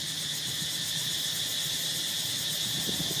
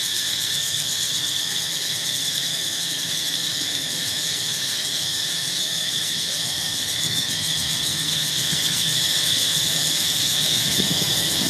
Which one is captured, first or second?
first